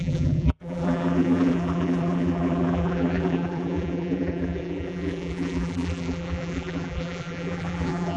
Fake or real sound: fake